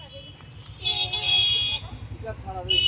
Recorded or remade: recorded